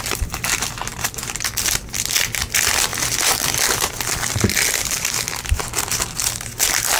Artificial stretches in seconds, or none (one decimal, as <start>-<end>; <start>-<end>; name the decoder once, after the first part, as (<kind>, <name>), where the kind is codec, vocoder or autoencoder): 0.9-1.4 (vocoder, BigVGAN v2); 2.9-5.5